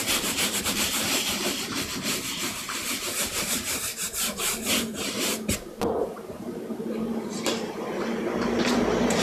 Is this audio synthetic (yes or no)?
yes